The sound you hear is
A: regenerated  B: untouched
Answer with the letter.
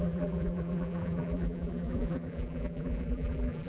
A